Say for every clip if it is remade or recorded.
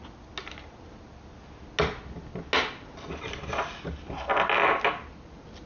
recorded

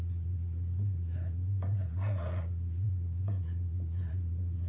remade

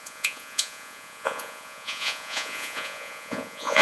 remade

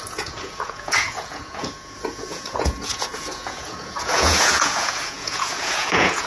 remade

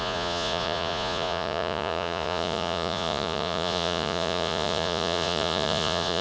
remade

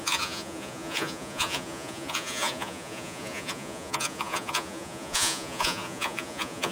remade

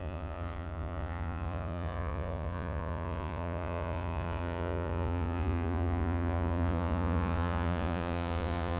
remade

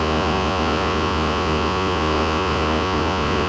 remade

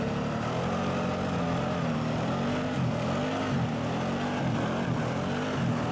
recorded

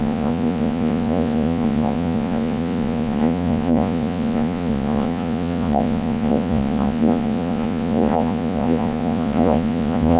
remade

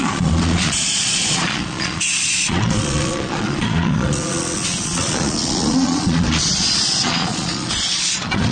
remade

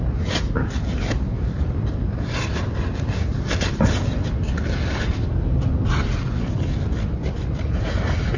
recorded